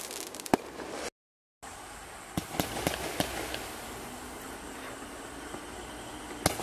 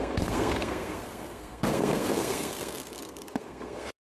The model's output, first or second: second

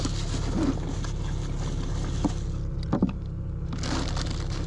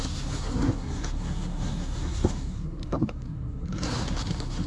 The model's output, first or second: second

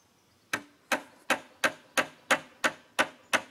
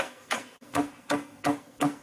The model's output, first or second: second